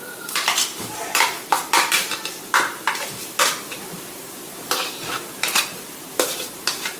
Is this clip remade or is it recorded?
remade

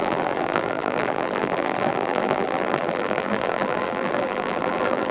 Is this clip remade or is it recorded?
remade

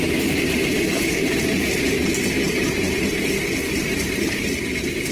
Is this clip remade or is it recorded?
remade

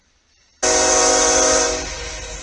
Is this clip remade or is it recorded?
recorded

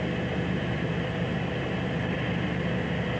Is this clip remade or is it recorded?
recorded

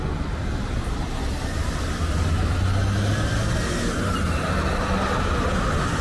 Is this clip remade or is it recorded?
recorded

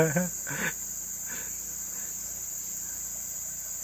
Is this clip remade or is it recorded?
recorded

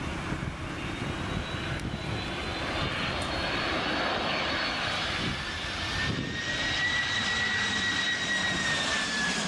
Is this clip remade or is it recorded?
remade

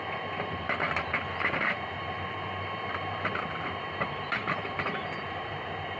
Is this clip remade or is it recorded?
remade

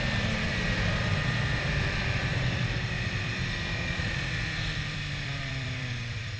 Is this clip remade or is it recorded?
remade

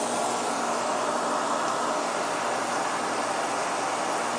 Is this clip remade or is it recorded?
recorded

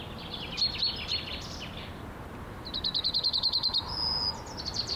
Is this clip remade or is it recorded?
recorded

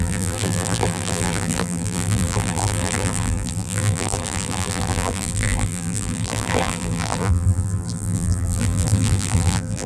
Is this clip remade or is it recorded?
remade